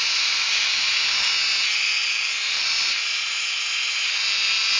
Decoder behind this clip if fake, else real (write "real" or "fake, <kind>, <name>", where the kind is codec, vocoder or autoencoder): real